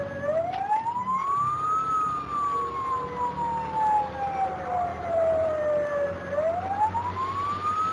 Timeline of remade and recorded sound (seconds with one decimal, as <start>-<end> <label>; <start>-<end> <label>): 0.0-4.9 recorded; 4.9-5.6 remade; 5.6-7.9 recorded